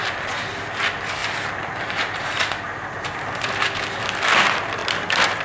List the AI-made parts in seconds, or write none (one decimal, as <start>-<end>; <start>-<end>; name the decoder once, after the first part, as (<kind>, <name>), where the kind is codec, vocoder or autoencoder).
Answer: 0.0-0.5 (vocoder, BigVGAN v2); 1.2-2.4